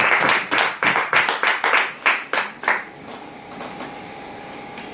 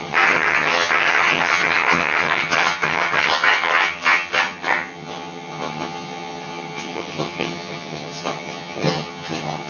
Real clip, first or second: first